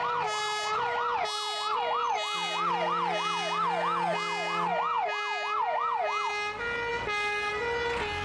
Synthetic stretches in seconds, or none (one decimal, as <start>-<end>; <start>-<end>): none